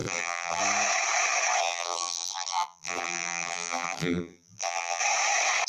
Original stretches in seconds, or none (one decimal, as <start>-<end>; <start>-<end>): 0.6-1.6; 5.0-5.7